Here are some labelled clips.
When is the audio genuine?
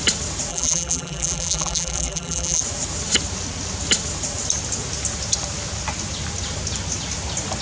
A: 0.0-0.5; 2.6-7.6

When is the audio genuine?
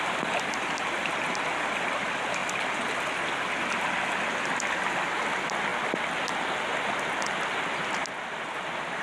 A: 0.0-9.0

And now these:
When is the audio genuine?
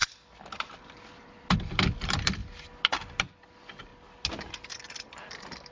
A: 0.0-0.8; 2.4-3.2; 3.9-4.7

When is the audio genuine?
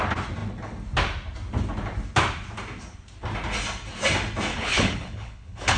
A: 0.0-4.5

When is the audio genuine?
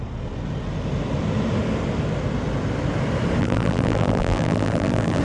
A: 0.0-3.4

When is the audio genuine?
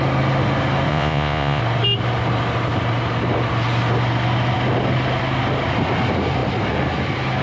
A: 0.0-0.9; 1.6-7.4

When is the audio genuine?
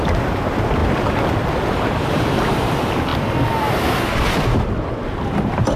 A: 0.0-5.8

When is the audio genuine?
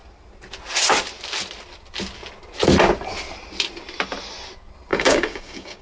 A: 0.0-4.9